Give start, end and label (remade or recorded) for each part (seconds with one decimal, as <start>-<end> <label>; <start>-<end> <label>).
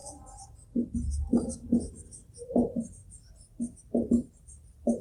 0.0-1.9 recorded; 1.9-3.0 remade; 3.0-4.3 recorded; 4.3-5.0 remade